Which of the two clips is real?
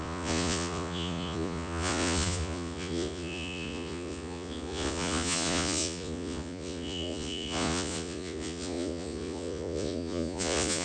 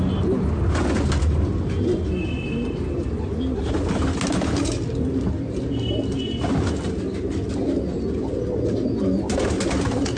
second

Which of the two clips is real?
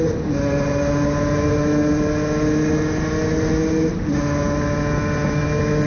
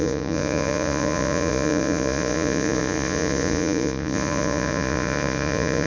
first